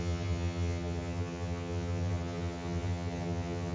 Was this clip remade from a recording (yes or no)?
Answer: yes